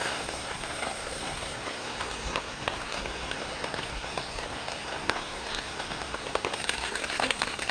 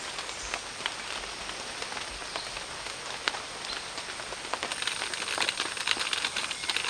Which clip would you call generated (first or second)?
first